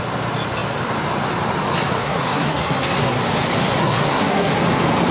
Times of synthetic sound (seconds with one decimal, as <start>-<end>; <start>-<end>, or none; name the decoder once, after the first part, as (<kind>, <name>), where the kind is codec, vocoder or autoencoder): 2.0-3.2 (codec, SNAC); 3.8-4.5